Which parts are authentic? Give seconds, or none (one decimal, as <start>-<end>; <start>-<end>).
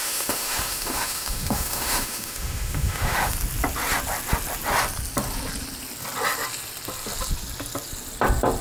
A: 3.3-8.6